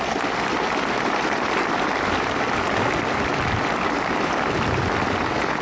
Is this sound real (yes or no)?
yes